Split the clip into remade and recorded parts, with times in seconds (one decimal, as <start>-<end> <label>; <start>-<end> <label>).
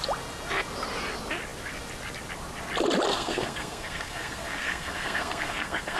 0.0-3.1 recorded; 3.1-6.0 remade